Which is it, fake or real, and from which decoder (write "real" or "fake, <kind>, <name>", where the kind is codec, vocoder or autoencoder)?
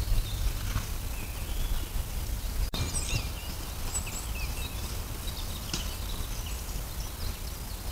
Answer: real